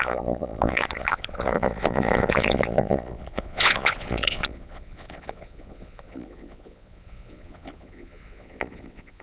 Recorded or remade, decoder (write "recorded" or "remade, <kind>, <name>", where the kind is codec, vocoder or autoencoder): remade, vocoder, Vocos